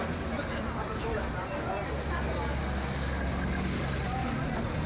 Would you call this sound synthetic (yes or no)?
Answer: no